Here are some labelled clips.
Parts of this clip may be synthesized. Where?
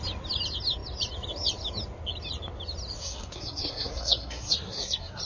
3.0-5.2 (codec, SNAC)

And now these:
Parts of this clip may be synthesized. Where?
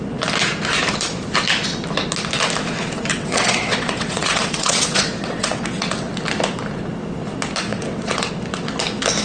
3.1-6.1 (vocoder, WaveNeXt); 7.7-8.3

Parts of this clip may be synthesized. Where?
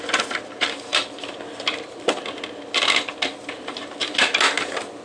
none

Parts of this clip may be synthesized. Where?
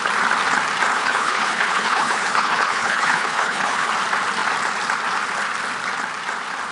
0.9-3.9 (codec, HILCodec)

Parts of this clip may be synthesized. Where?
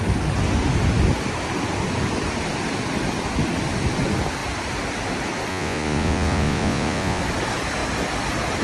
5.5-7.2 (vocoder, Vocos)